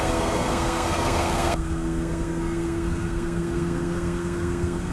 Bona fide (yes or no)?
no